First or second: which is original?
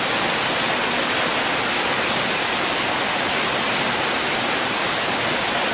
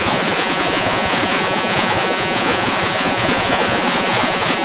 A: first